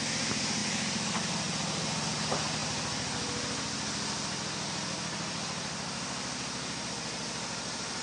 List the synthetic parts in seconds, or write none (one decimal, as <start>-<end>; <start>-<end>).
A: none

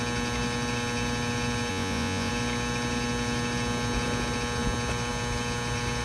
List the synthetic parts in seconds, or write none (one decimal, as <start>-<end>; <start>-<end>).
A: 1.7-2.3

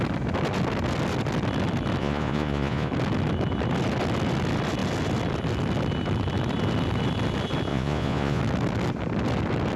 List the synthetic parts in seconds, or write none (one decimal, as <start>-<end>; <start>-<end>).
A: 2.0-2.9; 7.7-8.4

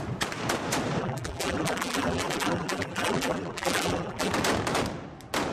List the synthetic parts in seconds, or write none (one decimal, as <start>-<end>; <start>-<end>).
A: 1.0-4.3

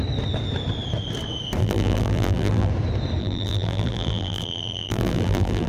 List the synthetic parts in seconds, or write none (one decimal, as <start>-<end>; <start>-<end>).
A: 1.6-2.7; 3.2-5.7